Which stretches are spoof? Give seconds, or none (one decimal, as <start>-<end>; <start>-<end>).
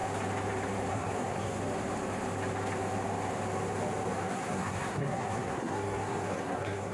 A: 0.9-1.6; 4.3-6.9